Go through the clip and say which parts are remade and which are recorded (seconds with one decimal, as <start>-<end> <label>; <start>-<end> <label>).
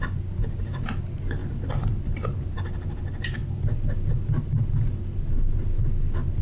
0.0-6.4 recorded